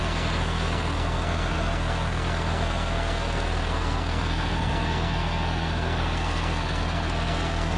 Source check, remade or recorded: remade